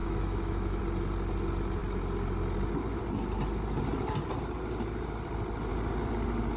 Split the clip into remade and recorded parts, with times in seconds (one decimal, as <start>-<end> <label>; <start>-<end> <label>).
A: 0.0-0.8 remade; 0.8-6.6 recorded